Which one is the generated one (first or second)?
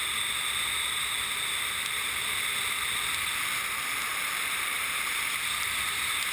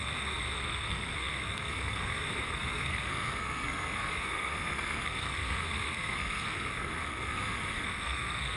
second